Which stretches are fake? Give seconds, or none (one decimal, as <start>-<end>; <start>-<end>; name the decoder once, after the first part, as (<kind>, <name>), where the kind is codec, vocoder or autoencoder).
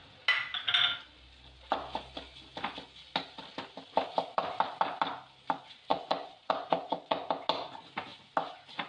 5.9-7.3 (vocoder, Vocos)